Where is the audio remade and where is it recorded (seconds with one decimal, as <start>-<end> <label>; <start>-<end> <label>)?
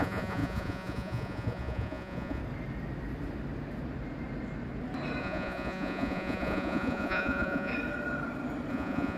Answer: 0.0-2.4 remade; 2.4-5.2 recorded; 5.2-7.7 remade; 7.7-8.7 recorded; 8.7-9.2 remade